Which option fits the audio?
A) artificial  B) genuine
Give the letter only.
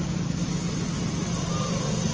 B